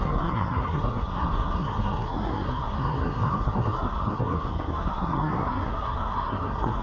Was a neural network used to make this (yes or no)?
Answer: yes